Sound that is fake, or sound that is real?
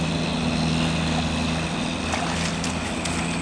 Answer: real